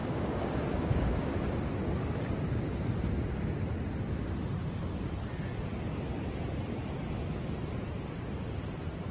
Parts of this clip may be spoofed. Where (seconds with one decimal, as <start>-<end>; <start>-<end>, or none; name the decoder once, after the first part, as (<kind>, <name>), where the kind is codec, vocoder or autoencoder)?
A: 0.0-1.5 (codec, DAC)

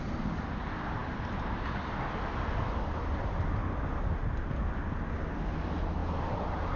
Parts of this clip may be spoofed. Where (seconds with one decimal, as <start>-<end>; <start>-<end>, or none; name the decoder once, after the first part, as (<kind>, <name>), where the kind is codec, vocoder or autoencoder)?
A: none

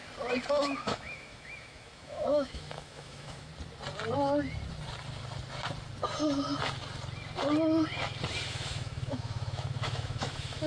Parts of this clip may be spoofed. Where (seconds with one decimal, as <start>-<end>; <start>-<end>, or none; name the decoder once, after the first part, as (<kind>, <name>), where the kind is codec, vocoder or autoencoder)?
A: 0.5-3.5 (autoencoder, DAC-VAE); 8.5-10.7

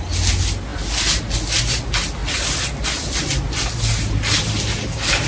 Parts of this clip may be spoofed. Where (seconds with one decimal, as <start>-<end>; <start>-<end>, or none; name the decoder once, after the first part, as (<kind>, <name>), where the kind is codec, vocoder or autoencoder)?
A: none

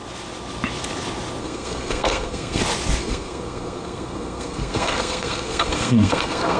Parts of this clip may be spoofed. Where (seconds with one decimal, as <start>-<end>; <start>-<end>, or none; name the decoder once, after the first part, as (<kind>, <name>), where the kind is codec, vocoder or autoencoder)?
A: 1.4-2.6 (codec, SNAC); 3.0-6.6